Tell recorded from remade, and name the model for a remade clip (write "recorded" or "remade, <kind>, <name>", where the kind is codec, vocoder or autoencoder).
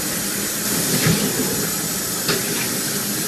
recorded